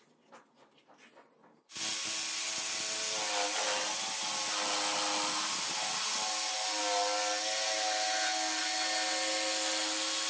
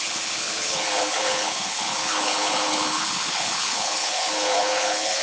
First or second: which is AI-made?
second